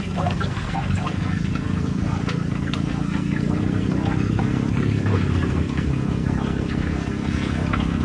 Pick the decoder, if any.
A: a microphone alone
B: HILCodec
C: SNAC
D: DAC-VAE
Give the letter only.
C